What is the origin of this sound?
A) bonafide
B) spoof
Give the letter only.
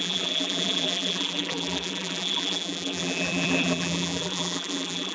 B